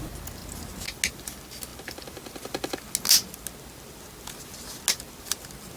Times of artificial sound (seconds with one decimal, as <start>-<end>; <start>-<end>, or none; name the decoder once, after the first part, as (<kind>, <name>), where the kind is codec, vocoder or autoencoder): none